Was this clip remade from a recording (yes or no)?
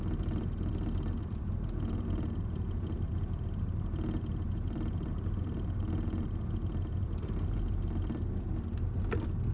no